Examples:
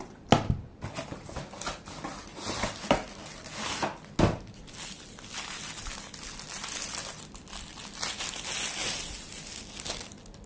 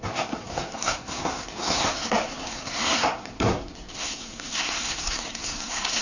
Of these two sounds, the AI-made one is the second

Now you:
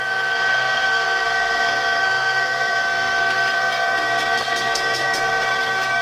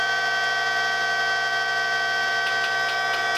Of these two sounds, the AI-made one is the first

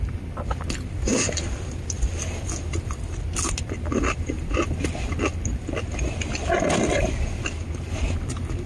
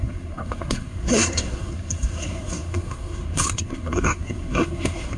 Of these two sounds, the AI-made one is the second